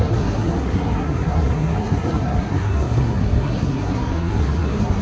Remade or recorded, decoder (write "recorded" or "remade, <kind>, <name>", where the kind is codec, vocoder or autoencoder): remade, codec, SNAC